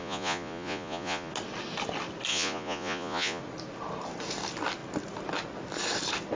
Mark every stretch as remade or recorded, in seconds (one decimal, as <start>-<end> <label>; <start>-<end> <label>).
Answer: 0.0-1.3 remade; 1.3-2.3 recorded; 2.3-3.4 remade; 3.4-6.4 recorded